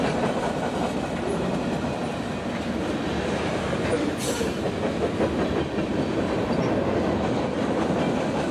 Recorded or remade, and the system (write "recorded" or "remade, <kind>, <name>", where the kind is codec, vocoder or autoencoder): recorded